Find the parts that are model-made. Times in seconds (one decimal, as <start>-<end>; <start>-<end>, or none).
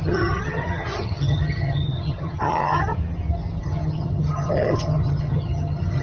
0.0-3.0; 3.6-6.0